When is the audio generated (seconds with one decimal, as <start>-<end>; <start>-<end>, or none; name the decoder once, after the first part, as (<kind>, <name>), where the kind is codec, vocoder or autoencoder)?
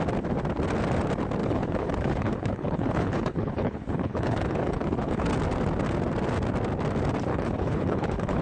1.4-5.3 (codec, HILCodec); 7.3-8.4